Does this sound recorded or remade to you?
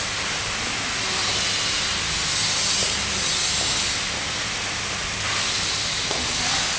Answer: recorded